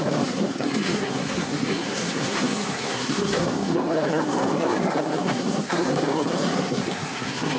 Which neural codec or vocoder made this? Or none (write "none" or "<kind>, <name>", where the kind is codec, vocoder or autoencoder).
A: codec, SNAC